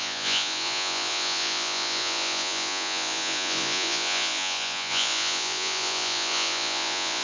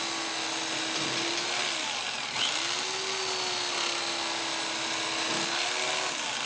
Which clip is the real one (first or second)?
second